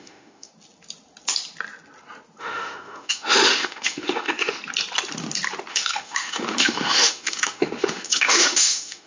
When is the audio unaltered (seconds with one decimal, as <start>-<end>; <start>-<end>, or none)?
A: 0.5-2.4; 4.6-5.7